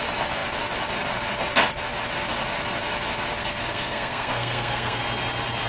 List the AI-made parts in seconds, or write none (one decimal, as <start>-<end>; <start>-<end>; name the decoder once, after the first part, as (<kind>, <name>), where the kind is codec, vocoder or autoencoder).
3.4-5.0 (codec, SNAC)